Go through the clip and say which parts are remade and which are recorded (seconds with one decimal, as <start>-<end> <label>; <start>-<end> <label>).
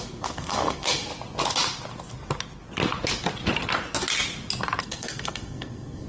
0.0-1.1 remade; 1.1-4.8 recorded; 4.8-6.1 remade